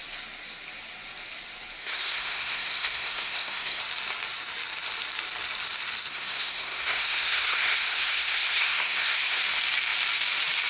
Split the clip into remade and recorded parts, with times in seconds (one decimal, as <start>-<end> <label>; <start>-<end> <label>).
0.0-1.8 recorded; 1.8-3.8 remade; 3.8-6.1 recorded; 6.1-9.4 remade; 9.4-10.7 recorded